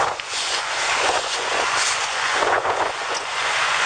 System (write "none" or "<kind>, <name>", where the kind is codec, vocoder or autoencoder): vocoder, Vocos